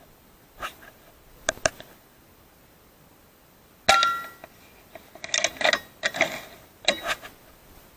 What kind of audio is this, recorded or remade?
recorded